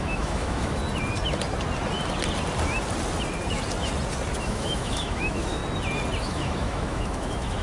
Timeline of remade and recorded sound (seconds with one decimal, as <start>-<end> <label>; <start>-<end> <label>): 0.0-0.8 remade; 0.8-4.4 recorded; 4.4-5.6 remade; 5.6-6.2 recorded; 6.2-7.6 remade